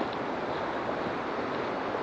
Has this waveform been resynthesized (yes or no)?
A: no